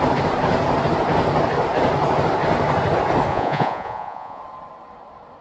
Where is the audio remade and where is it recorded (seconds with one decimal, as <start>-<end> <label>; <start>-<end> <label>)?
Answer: 0.0-3.3 recorded; 3.3-4.4 remade; 4.4-5.4 recorded